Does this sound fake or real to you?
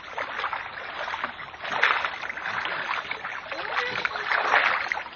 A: real